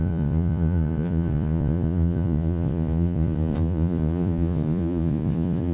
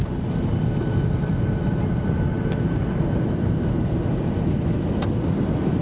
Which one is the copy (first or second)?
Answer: first